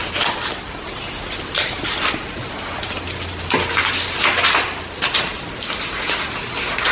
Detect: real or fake real